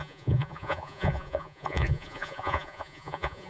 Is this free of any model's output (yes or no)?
no